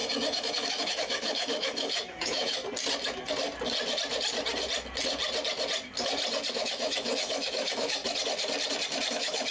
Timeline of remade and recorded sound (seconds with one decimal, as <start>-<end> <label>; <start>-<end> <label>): 0.0-2.6 remade; 2.6-6.5 recorded; 6.5-8.0 remade; 8.0-9.1 recorded; 9.1-9.5 remade